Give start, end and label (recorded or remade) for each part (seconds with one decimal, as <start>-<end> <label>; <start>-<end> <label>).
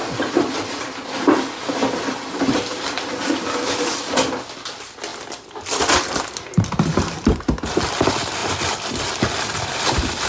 0.0-1.8 recorded; 1.8-3.3 remade; 3.3-8.4 recorded; 8.4-10.3 remade